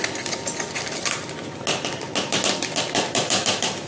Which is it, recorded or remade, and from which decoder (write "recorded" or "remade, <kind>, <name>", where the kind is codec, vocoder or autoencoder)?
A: recorded